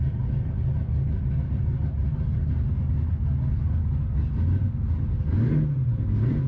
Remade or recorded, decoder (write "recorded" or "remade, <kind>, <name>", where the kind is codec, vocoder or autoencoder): recorded